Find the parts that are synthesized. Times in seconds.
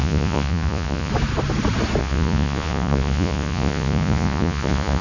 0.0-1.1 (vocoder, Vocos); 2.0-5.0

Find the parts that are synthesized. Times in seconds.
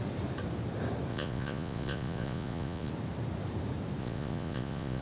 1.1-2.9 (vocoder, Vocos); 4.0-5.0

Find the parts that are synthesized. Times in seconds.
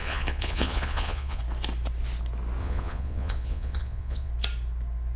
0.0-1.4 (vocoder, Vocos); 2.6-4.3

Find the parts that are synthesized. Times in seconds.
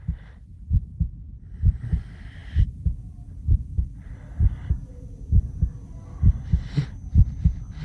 none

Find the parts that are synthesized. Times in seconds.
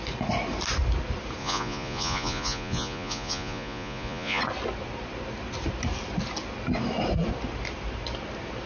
1.4-4.4 (vocoder, Vocos)